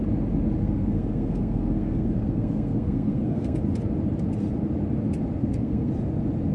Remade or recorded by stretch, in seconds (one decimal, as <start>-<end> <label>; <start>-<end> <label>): 0.0-0.6 recorded; 0.6-3.6 remade; 3.6-5.4 recorded; 5.4-5.9 remade; 5.9-6.5 recorded